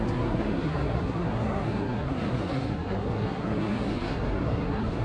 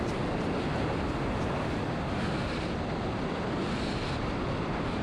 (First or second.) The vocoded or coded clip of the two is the first